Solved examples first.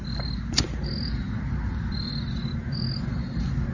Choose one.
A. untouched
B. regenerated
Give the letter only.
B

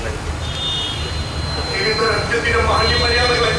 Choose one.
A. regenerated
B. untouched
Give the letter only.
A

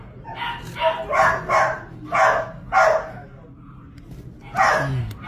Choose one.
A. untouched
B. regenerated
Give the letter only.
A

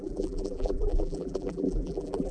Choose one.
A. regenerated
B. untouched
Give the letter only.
A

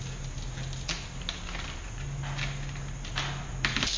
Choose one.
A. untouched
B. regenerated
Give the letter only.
A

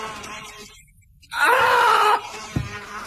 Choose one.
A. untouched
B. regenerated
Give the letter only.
B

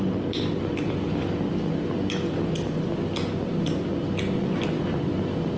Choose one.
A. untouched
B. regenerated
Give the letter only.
A